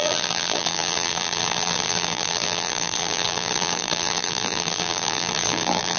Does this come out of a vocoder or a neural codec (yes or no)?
yes